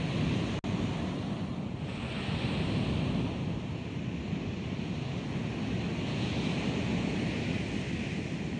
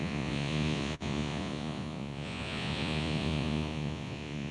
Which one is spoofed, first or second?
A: second